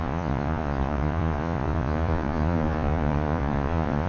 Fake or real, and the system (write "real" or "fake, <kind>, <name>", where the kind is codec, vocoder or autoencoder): fake, vocoder, Vocos